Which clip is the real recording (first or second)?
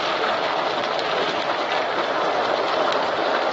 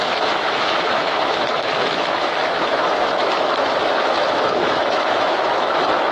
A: first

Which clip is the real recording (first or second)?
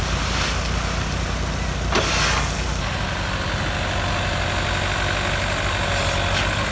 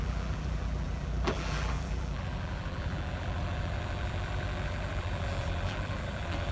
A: first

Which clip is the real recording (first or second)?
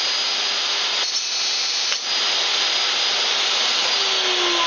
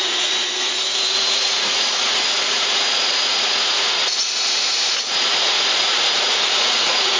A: first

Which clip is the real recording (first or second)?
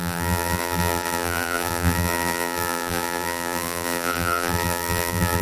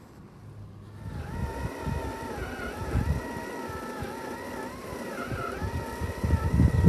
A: second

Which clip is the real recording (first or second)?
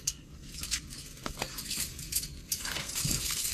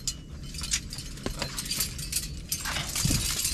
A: second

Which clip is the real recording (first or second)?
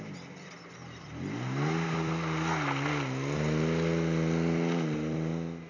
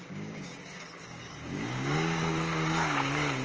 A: first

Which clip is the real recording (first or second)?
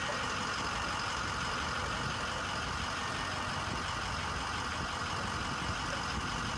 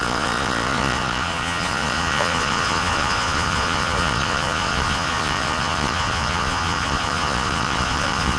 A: first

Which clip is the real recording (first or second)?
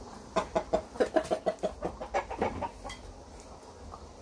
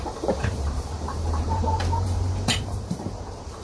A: first